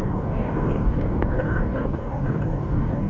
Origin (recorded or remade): remade